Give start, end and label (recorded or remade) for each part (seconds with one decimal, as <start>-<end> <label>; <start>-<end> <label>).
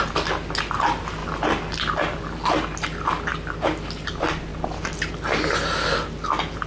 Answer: 0.0-3.3 recorded; 3.3-3.9 remade; 3.9-6.7 recorded